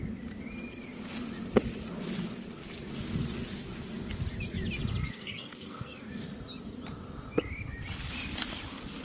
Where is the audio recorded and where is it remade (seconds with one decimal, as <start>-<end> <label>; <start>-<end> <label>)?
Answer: 0.0-5.0 recorded; 5.0-6.1 remade; 6.1-9.0 recorded